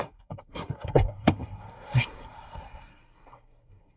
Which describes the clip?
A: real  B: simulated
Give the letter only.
B